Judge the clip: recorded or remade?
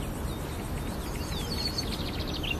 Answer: recorded